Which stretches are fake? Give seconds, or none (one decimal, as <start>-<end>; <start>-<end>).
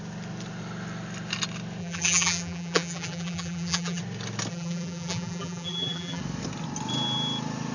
1.8-4.0; 4.5-6.2